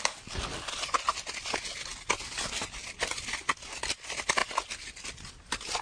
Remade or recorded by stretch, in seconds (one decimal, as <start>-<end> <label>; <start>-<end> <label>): 0.0-5.8 recorded